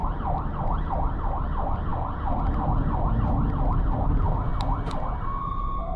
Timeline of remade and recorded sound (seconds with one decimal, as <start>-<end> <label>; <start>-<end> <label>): 0.0-6.0 recorded